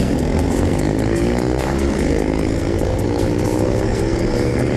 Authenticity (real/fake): fake